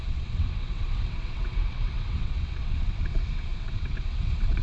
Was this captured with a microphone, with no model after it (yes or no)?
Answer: no